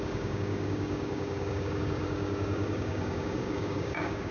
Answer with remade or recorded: remade